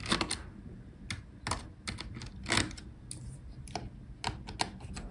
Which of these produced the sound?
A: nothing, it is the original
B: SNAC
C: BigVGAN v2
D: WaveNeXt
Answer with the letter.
A